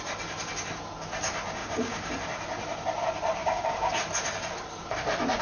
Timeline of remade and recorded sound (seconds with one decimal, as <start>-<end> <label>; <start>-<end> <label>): 0.0-1.6 recorded; 1.6-2.1 remade; 2.1-3.4 recorded; 3.4-4.0 remade; 4.0-5.4 recorded